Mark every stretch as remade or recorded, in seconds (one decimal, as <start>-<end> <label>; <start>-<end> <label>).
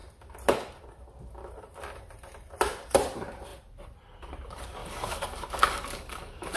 0.0-4.8 recorded; 4.8-6.6 remade